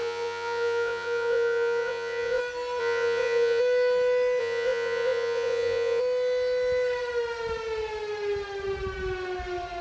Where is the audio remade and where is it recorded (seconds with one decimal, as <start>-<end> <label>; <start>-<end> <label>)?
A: 0.0-2.4 remade; 2.4-2.8 recorded; 2.8-3.6 remade; 3.6-4.4 recorded; 4.4-6.0 remade; 6.0-9.8 recorded